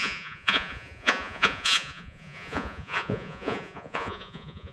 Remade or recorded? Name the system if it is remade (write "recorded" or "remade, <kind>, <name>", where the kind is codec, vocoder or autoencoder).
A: remade, vocoder, Vocos